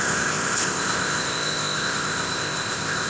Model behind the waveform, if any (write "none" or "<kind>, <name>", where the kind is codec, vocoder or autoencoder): codec, ZipCodec